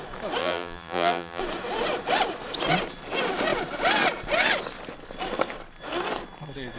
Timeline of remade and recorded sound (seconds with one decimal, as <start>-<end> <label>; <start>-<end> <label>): 0.0-0.4 recorded; 0.4-1.4 remade; 1.4-6.8 recorded